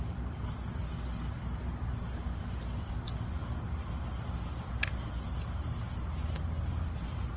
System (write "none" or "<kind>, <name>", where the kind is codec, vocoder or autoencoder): none